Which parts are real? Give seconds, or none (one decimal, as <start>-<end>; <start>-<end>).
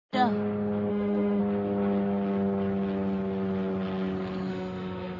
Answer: 0.0-0.9; 1.4-4.5